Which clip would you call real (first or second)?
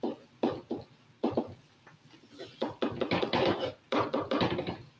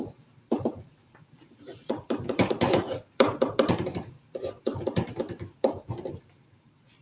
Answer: first